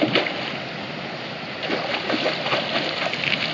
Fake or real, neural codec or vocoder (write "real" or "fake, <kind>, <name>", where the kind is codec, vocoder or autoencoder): real